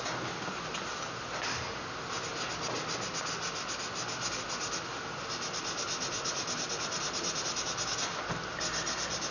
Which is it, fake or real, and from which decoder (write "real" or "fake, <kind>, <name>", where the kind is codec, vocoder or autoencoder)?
real